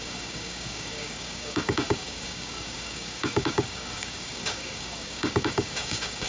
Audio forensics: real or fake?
fake